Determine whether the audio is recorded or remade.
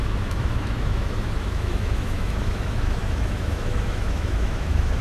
remade